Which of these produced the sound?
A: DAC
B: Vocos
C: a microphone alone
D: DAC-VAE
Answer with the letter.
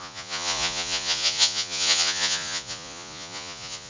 B